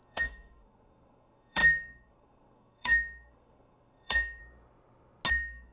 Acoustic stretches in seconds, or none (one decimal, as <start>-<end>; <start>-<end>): 4.4-5.3